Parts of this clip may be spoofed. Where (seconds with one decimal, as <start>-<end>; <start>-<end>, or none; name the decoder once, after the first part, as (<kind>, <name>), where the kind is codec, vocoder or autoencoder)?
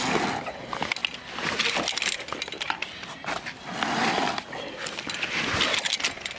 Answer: none